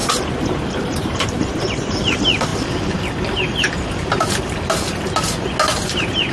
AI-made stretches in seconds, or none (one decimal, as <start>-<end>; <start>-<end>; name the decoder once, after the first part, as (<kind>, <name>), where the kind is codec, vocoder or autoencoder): 0.8-2.5 (vocoder, BigVGAN v2)